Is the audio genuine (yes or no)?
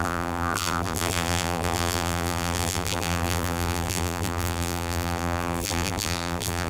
no